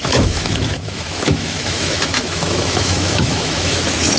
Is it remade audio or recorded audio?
remade